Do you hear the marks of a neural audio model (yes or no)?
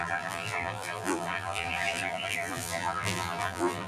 yes